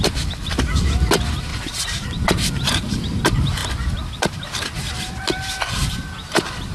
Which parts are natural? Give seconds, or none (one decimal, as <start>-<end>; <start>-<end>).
0.0-1.5; 3.2-6.7